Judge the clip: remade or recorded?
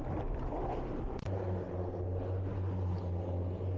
recorded